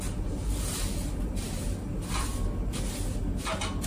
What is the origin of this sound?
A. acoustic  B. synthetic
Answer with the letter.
A